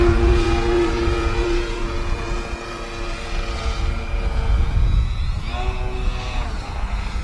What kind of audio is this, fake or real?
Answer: fake